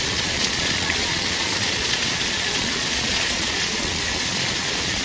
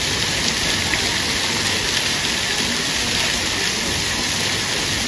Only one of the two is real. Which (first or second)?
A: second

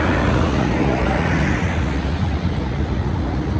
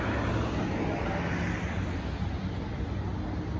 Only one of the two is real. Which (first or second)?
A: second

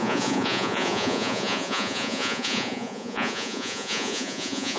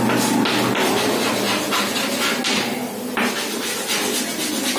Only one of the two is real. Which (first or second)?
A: second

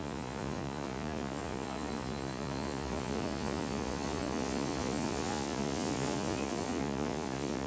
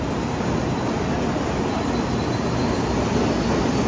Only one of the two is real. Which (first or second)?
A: second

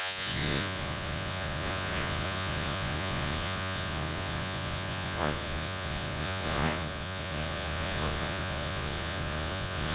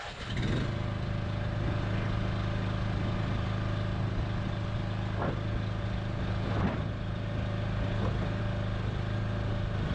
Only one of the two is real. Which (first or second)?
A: second